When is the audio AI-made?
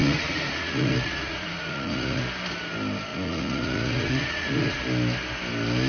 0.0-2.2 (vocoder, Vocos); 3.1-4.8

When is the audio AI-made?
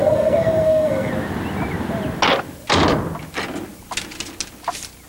0.0-1.1 (codec, SNAC)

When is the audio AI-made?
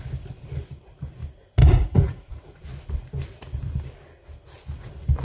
1.6-2.6 (vocoder, Vocos)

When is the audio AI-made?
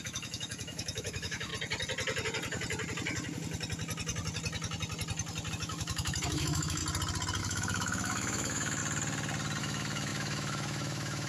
0.0-1.5 (autoencoder, DAC-VAE); 5.5-6.8; 7.4-8.8; 9.6-11.3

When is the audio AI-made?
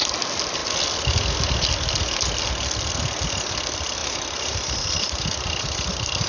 4.0-6.3 (vocoder, BigVGAN v2)